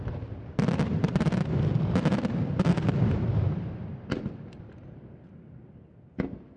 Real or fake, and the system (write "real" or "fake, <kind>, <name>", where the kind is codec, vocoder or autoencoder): real